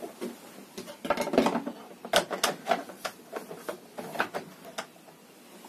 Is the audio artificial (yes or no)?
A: no